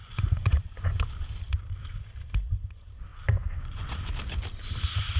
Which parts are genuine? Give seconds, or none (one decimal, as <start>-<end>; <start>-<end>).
1.1-3.1; 4.1-5.2